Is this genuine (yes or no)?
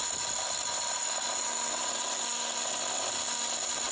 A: yes